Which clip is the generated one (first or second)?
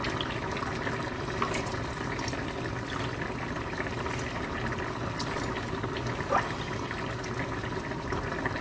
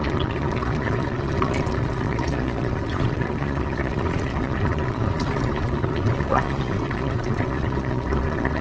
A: second